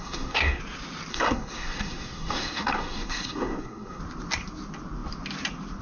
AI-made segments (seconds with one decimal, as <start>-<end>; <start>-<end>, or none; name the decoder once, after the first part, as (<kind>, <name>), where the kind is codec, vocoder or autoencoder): 0.0-0.6 (codec, SNAC); 1.1-4.0